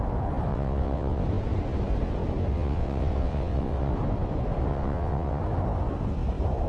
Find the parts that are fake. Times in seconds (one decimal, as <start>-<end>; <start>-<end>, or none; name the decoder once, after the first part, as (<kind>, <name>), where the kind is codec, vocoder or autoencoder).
0.5-1.2 (vocoder, WaveNeXt); 2.5-3.9; 4.7-5.4